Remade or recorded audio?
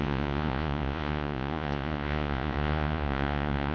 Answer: remade